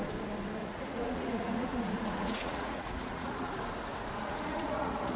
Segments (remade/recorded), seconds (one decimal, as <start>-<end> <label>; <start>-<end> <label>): 0.0-0.6 recorded; 0.6-3.5 remade; 3.5-4.2 recorded; 4.2-5.2 remade